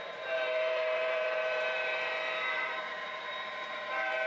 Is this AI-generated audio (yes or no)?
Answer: yes